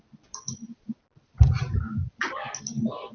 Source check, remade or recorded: recorded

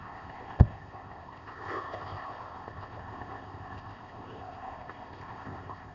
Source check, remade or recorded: remade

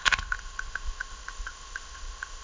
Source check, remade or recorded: remade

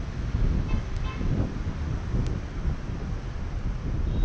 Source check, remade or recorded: recorded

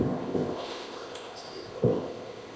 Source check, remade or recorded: remade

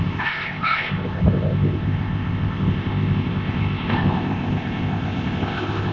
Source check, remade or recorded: remade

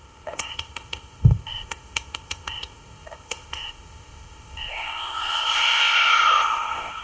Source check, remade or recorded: remade